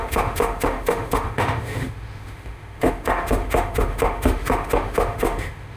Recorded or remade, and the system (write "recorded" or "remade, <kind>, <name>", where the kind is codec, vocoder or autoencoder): remade, autoencoder, DAC-VAE